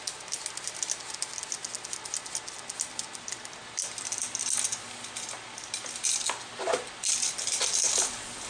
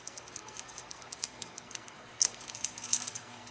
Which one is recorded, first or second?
first